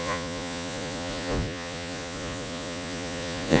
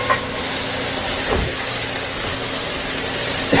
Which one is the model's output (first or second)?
first